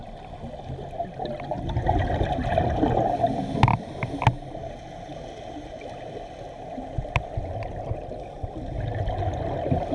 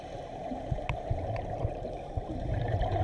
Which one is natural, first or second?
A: first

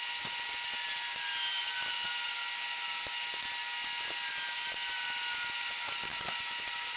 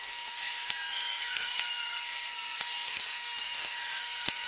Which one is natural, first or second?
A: first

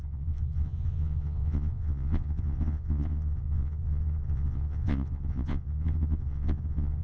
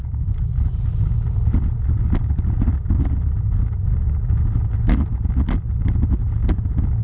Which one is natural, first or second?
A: second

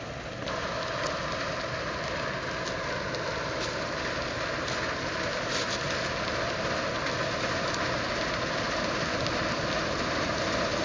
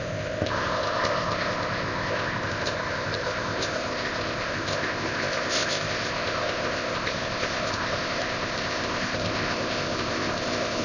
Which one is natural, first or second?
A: first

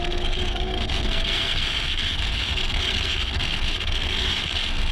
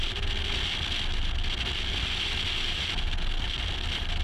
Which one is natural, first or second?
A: second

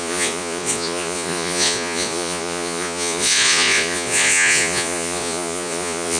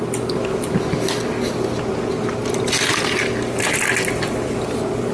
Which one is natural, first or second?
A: second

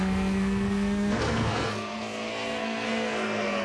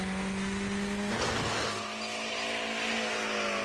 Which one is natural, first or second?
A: second